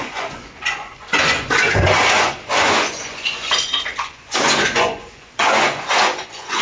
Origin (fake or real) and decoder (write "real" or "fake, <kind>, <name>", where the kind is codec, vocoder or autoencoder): fake, vocoder, Vocos